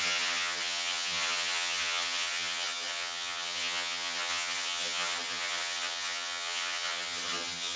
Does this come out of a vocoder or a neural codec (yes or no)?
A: yes